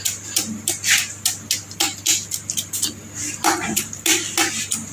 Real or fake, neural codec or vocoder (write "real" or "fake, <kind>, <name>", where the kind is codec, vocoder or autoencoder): real